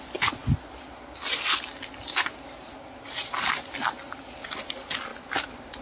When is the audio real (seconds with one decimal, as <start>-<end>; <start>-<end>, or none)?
0.0-5.8